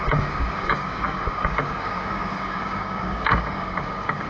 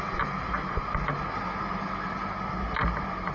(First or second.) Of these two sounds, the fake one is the first